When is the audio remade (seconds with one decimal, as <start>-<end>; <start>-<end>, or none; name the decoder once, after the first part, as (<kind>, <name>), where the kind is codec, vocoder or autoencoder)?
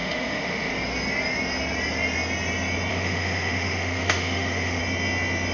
0.0-0.7 (autoencoder, DAC-VAE); 2.9-4.8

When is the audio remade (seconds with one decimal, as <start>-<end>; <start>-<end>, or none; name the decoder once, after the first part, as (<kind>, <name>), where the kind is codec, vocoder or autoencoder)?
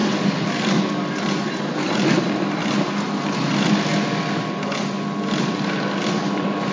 none